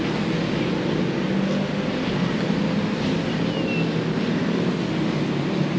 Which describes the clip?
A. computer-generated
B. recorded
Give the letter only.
B